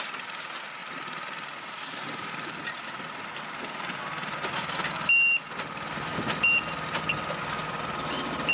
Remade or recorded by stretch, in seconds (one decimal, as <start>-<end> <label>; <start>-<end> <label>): 0.0-8.5 recorded